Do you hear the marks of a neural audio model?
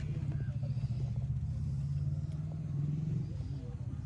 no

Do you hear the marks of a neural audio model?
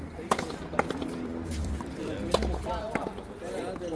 yes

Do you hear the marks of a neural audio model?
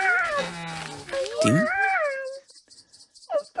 no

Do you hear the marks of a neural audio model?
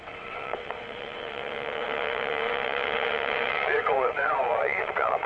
yes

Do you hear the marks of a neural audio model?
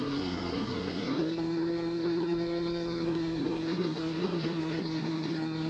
yes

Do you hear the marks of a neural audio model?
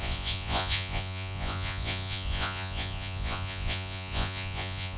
yes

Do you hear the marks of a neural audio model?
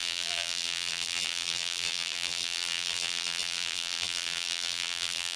yes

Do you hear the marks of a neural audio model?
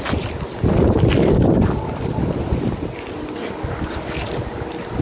no